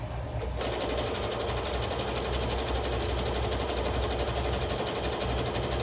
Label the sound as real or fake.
real